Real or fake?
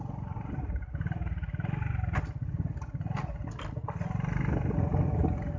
real